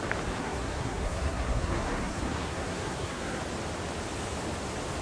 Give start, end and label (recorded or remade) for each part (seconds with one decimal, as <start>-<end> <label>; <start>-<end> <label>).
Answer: 0.0-0.4 recorded; 0.4-3.4 remade; 3.4-5.0 recorded